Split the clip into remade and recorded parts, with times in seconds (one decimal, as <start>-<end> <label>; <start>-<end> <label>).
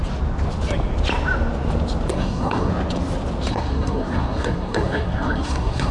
0.0-2.1 recorded; 2.1-2.7 remade; 2.7-3.5 recorded; 3.5-5.9 remade